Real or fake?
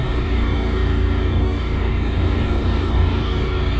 fake